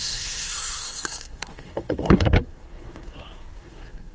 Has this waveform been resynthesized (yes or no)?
yes